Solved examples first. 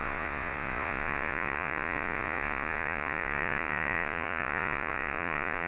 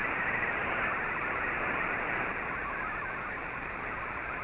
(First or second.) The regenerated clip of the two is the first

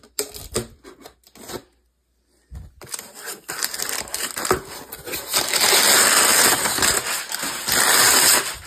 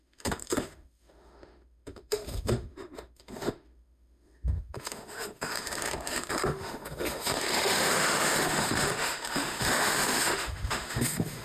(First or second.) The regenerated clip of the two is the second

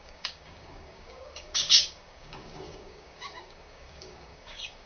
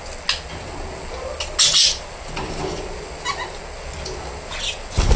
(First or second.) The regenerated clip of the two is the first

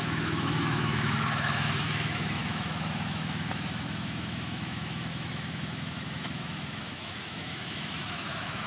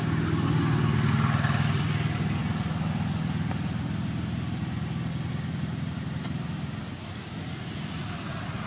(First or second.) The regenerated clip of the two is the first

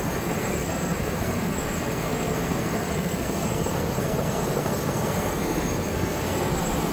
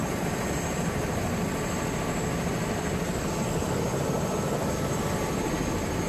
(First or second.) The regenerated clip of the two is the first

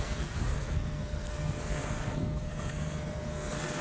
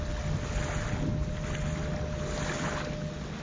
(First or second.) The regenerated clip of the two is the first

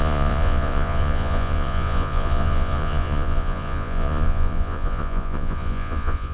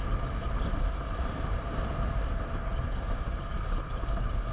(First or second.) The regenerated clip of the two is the first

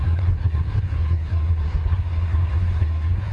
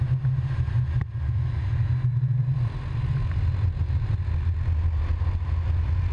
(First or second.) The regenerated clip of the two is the first